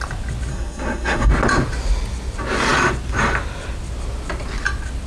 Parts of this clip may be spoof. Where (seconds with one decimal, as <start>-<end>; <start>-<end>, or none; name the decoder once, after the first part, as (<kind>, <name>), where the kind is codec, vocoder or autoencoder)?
0.5-1.3 (codec, SNAC)